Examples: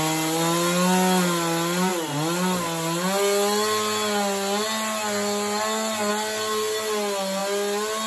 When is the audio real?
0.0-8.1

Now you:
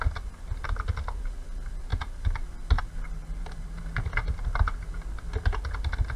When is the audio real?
0.0-3.2; 3.8-6.2

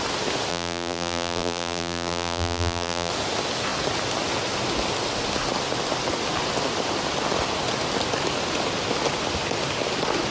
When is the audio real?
0.0-0.5; 3.1-10.3

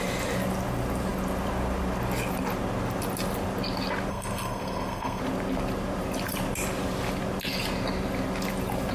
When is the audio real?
0.0-4.1; 5.2-8.9

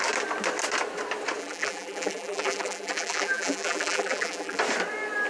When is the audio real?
0.0-1.4; 4.6-5.3

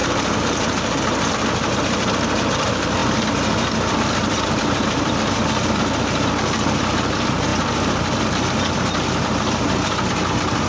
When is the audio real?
3.0-4.0